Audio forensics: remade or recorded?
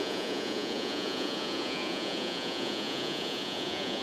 remade